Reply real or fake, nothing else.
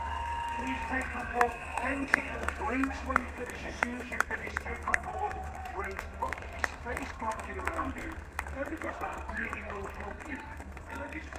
fake